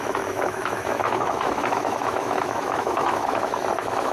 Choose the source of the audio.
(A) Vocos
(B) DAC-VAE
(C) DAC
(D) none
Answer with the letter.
B